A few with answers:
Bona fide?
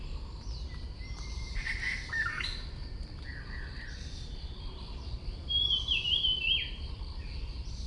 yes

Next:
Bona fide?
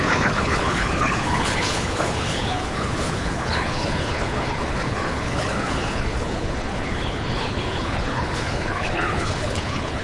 no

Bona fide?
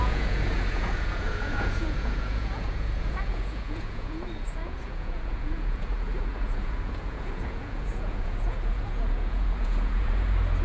no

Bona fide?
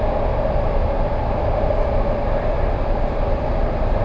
yes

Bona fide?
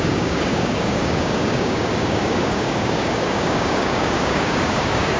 no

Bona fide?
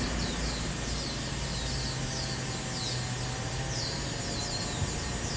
yes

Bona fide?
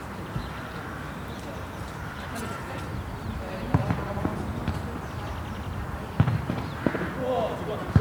yes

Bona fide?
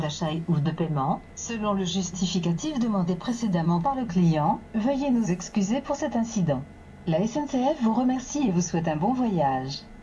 yes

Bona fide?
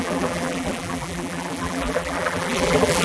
no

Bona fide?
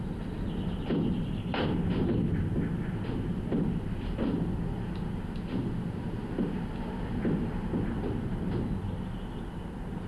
yes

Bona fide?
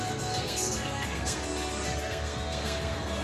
no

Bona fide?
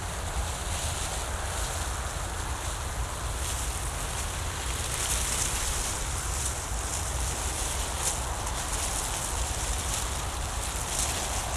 yes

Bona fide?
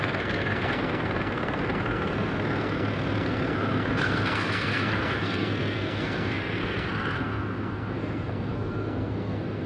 no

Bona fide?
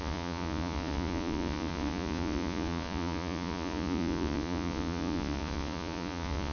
no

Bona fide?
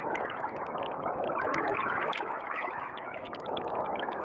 no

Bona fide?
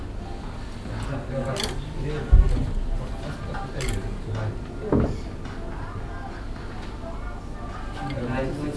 yes